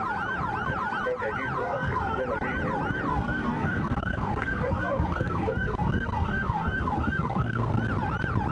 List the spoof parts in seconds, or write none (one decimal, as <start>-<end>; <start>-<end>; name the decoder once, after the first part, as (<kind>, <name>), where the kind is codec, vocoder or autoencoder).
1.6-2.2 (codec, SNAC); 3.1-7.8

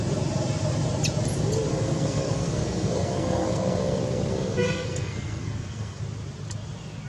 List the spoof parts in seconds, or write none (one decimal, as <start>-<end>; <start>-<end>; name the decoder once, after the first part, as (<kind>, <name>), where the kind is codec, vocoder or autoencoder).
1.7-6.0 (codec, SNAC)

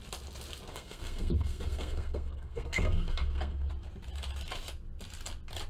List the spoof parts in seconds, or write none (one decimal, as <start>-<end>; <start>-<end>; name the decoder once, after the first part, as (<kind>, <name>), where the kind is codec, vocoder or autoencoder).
0.7-3.7 (codec, SNAC)

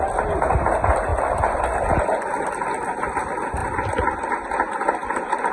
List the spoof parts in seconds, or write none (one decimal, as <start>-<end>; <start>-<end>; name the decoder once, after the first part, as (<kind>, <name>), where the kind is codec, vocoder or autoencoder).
none